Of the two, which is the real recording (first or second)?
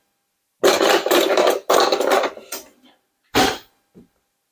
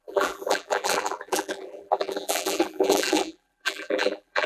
first